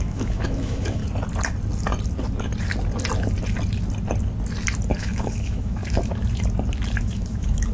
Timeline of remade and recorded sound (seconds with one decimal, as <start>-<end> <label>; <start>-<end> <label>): 0.0-1.0 remade; 1.0-5.0 recorded; 5.0-5.8 remade; 5.8-7.0 recorded; 7.0-7.7 remade